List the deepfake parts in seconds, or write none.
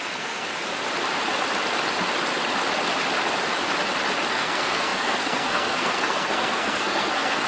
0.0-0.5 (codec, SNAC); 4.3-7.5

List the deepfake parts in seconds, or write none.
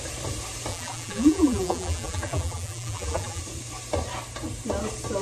0.7-3.4 (vocoder, BigVGAN v2)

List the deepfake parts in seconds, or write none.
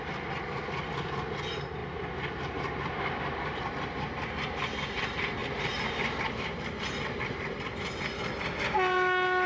1.8-3.7 (vocoder, BigVGAN v2); 5.4-8.0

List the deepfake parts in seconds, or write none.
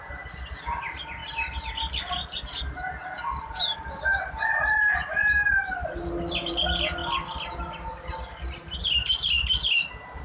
none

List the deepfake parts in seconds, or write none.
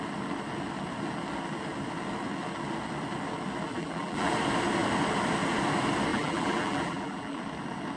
3.7-4.3 (vocoder, BigVGAN v2); 6.1-7.4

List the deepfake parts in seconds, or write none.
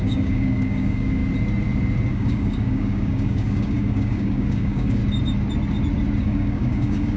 0.0-1.2 (codec, DAC); 2.1-5.0; 6.2-7.2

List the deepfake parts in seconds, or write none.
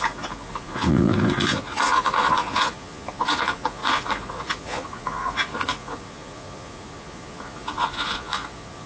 0.0-8.9 (vocoder, Vocos)